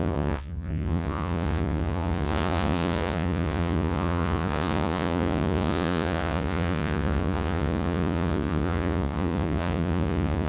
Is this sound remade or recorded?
remade